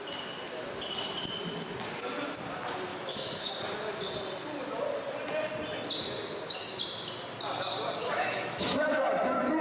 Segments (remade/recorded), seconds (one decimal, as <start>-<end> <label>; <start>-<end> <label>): 0.0-2.9 recorded; 2.9-3.5 remade; 3.5-8.0 recorded; 8.0-8.9 remade; 8.9-9.6 recorded